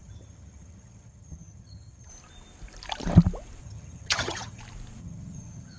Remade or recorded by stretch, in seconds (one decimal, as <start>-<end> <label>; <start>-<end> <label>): 0.0-2.1 remade; 2.1-3.6 recorded; 3.6-4.6 remade; 4.6-5.0 recorded; 5.0-5.8 remade